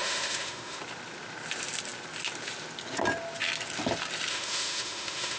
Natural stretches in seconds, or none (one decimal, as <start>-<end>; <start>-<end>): 0.8-4.3